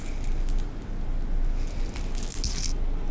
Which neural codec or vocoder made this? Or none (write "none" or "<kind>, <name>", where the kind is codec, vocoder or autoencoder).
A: none